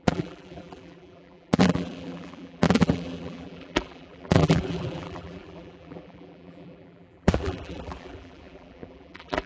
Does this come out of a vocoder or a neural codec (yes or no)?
yes